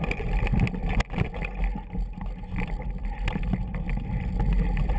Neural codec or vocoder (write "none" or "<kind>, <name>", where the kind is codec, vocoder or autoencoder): none